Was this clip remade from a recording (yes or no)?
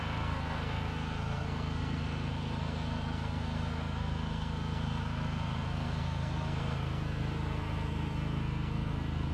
yes